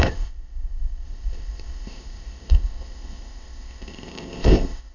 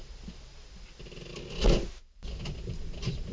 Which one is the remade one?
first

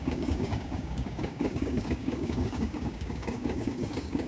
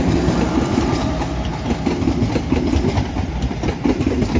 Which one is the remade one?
first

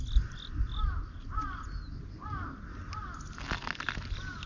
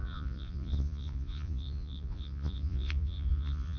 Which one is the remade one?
second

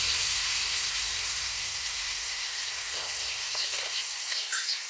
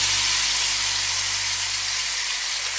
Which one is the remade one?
first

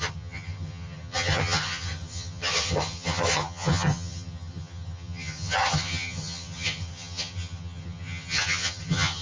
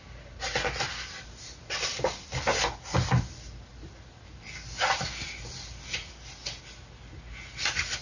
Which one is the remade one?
first